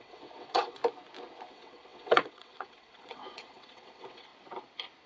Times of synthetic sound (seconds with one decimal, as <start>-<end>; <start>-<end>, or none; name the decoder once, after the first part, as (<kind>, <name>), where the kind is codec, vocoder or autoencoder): 0.0-0.8 (vocoder, WaveNeXt); 1.5-4.3